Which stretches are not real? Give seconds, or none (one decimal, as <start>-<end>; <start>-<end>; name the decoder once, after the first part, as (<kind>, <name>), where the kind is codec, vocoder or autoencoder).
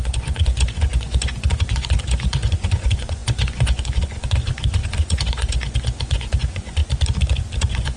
0.0-6.8 (vocoder, Vocos); 7.6-8.0